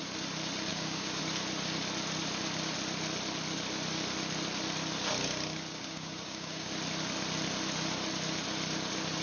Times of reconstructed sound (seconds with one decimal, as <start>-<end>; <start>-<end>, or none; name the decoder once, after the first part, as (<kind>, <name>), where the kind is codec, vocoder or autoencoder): 0.7-1.2 (codec, DAC); 5.7-6.7